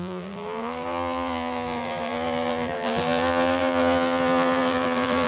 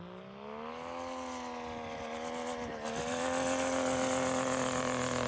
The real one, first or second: second